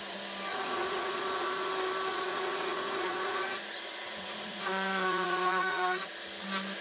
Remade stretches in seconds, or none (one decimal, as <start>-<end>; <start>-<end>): 0.5-1.7; 2.1-6.1